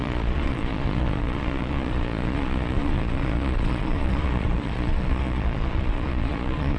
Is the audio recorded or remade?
remade